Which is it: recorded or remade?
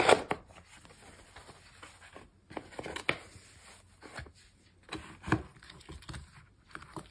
recorded